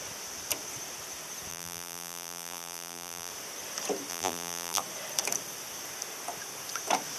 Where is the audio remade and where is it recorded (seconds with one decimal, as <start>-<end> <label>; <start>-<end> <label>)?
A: 0.0-1.5 recorded; 1.5-3.3 remade; 3.3-4.1 recorded; 4.1-4.8 remade; 4.8-7.2 recorded